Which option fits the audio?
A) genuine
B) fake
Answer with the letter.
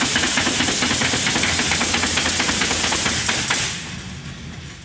A